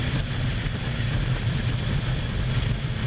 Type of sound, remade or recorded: recorded